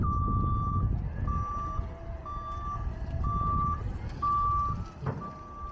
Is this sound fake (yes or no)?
no